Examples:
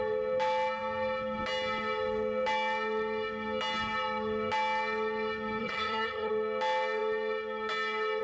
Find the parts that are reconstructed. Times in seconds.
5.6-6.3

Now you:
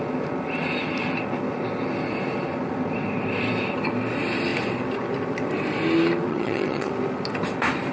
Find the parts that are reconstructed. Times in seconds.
6.3-6.9

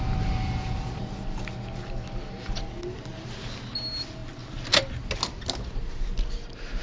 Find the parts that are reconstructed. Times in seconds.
none

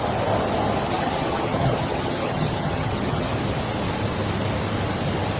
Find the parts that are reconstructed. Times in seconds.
0.8-3.3

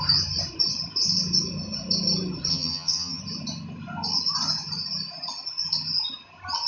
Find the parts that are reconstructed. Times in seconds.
2.5-3.2